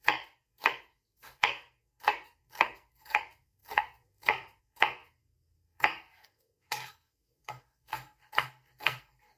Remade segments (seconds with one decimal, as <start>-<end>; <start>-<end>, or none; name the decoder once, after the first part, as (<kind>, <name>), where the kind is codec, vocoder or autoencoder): 0.0-9.4 (codec, SNAC)